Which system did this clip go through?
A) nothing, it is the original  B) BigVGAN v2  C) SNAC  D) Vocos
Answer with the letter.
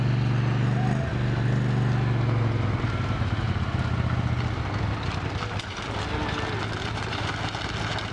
A